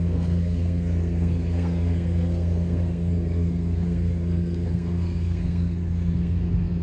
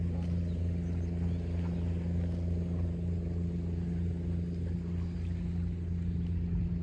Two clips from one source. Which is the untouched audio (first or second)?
second